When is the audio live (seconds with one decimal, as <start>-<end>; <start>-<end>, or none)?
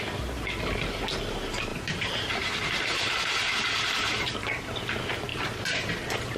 0.0-1.7; 4.7-5.3